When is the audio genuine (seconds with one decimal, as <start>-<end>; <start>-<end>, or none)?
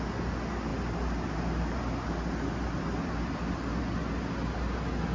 0.0-5.1